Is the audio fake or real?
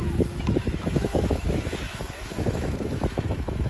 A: fake